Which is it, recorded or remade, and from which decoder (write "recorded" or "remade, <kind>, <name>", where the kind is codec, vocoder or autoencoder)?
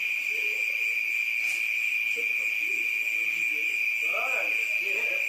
recorded